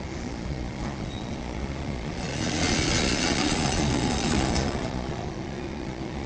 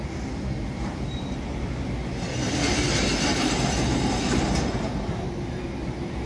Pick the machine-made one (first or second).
first